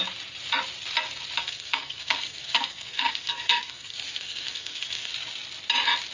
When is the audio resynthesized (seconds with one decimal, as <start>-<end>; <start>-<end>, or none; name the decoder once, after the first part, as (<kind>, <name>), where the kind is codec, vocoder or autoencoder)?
1.4-5.1 (codec, SNAC)